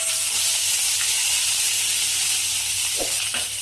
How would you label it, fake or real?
fake